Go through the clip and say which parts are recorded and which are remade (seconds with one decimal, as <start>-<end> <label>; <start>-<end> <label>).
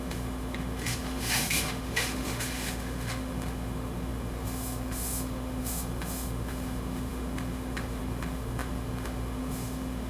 0.0-10.1 remade